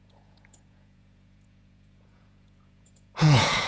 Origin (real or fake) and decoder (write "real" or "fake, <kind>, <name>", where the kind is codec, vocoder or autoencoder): fake, vocoder, Vocos